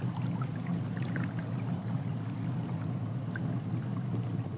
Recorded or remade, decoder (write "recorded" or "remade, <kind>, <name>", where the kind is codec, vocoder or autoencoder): recorded